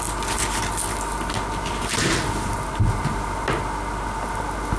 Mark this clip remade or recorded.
recorded